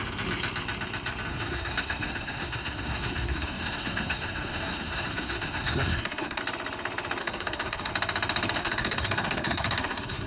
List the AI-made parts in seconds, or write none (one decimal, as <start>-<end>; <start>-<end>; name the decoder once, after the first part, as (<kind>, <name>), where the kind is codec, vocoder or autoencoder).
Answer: 1.3-6.4 (codec, SNAC); 7.2-7.9; 8.6-10.3